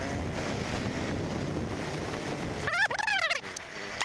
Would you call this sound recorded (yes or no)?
yes